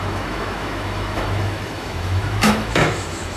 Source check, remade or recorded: remade